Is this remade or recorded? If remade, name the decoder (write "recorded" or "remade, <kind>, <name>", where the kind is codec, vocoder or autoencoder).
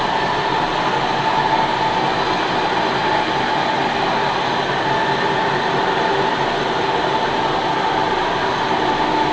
recorded